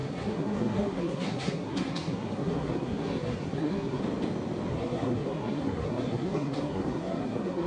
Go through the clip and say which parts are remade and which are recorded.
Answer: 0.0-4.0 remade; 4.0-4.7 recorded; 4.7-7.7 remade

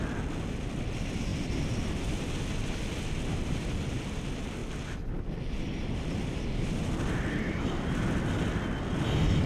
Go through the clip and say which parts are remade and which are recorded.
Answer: 0.0-9.5 recorded